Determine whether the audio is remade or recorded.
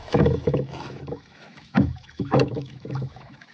remade